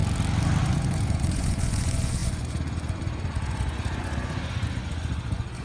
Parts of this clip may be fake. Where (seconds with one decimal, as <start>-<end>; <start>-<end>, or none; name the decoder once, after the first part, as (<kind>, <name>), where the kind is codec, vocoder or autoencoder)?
0.6-5.6 (vocoder, Vocos)